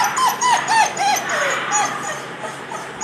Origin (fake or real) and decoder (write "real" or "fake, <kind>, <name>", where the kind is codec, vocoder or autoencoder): fake, vocoder, BigVGAN v2